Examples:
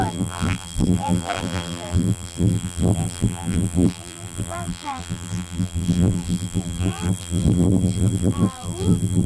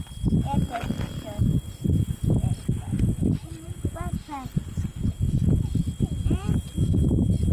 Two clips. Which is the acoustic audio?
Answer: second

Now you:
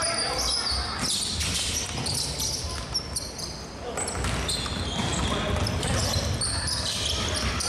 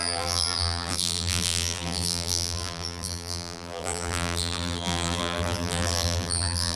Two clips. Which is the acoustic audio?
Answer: first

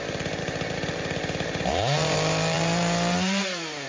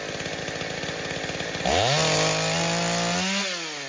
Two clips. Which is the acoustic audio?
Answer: second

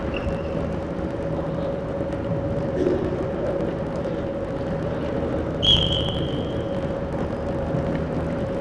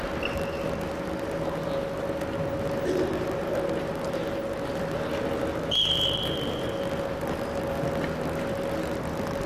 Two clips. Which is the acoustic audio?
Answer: second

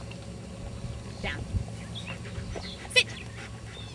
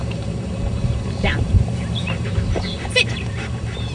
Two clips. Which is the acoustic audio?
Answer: first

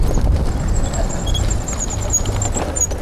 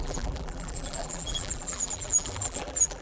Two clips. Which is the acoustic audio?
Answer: first